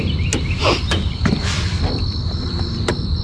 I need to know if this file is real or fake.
real